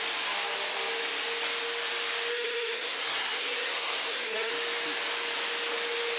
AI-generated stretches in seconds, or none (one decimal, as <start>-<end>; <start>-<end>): 2.3-4.5